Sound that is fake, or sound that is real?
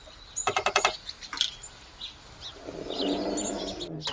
real